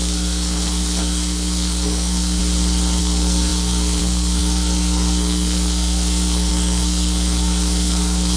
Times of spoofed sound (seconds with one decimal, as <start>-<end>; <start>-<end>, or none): 0.0-2.4; 3.0-8.4